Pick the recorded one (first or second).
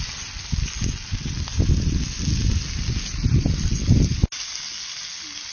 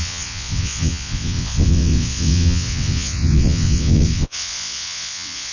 first